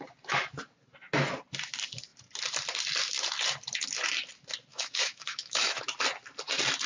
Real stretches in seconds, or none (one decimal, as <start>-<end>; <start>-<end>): 0.0-4.7; 5.8-6.9